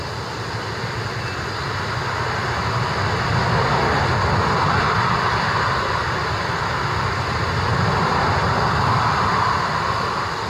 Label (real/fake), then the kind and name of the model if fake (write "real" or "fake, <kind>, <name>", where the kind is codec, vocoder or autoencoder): real